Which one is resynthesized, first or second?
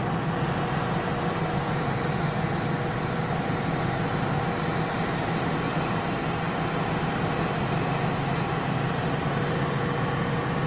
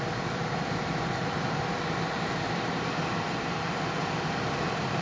second